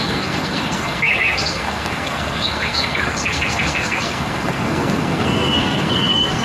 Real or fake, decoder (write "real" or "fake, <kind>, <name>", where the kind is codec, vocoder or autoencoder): fake, codec, SNAC